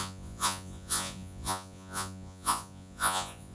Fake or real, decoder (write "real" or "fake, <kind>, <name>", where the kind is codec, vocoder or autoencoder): fake, vocoder, Vocos